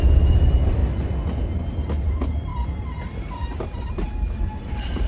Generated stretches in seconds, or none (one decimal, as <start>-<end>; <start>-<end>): none